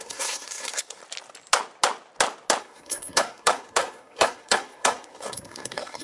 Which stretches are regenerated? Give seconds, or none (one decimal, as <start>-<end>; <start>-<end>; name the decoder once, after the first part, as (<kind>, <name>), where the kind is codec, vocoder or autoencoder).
0.0-1.0 (codec, SNAC); 2.6-6.0